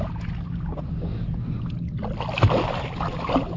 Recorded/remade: recorded